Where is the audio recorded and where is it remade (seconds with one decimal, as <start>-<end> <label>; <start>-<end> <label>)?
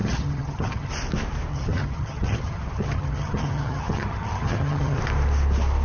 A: 0.0-0.9 remade; 0.9-1.5 recorded; 1.5-5.0 remade; 5.0-5.8 recorded